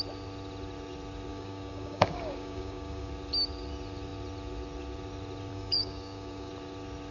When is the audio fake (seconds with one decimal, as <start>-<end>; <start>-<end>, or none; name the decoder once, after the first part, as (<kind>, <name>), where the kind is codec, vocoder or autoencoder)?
1.3-3.1 (codec, DAC); 5.5-6.5